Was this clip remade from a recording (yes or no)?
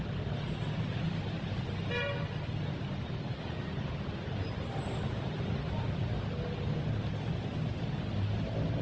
no